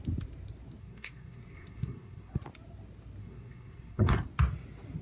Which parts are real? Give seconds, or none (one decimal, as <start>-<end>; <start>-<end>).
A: 0.0-0.8; 2.3-3.2; 4.1-5.0